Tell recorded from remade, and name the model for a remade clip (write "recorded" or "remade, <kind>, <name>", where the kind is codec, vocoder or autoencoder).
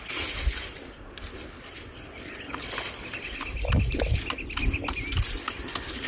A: recorded